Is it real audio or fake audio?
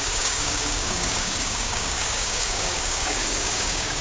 fake